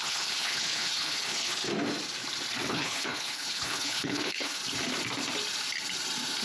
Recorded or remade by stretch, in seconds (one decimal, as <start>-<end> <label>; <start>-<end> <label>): 0.0-1.7 remade; 1.7-2.7 recorded; 2.7-4.6 remade; 4.6-6.4 recorded